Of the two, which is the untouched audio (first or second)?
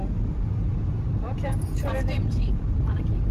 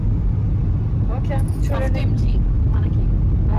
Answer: second